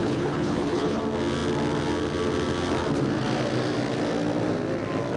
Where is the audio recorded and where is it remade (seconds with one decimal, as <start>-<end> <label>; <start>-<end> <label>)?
0.0-1.0 remade; 1.0-5.2 recorded